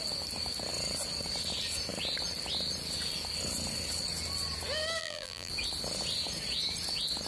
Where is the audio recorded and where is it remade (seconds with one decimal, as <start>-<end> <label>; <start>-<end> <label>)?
0.0-5.0 recorded; 5.0-5.5 remade; 5.5-7.3 recorded